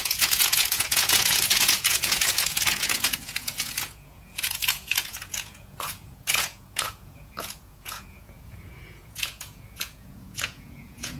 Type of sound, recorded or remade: remade